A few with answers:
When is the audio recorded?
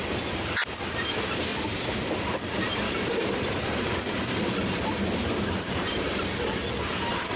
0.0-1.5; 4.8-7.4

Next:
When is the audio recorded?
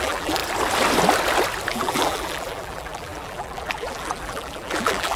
0.4-1.7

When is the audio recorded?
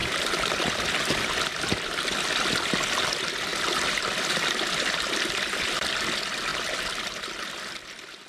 0.7-3.5; 5.9-8.3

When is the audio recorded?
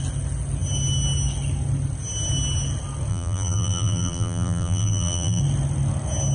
0.0-3.1; 5.4-6.3